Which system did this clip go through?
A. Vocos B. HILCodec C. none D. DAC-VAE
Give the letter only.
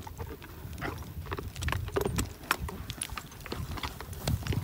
C